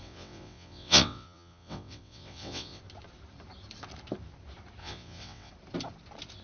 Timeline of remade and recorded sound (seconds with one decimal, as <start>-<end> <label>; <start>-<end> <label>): 0.0-2.8 remade; 2.8-4.8 recorded; 4.8-5.5 remade; 5.5-6.4 recorded